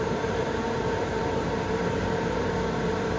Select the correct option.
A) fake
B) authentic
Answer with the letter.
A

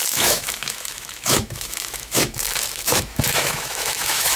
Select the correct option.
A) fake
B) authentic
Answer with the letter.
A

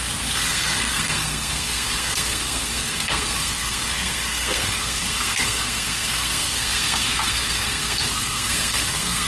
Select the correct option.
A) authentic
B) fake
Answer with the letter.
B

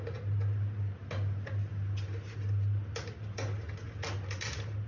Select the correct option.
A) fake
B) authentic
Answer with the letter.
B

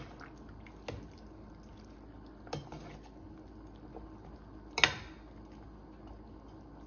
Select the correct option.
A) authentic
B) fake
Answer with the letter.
A